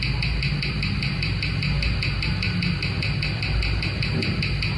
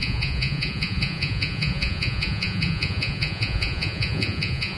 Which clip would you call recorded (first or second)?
first